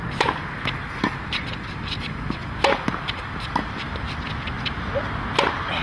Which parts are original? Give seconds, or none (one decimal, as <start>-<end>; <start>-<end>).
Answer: 0.0-5.8